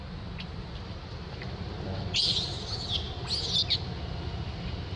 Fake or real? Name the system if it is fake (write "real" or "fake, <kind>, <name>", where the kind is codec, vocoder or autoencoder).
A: real